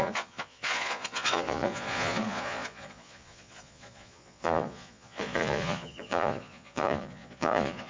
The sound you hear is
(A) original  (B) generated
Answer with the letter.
B